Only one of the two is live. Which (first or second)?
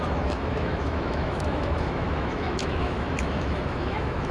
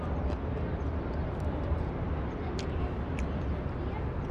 second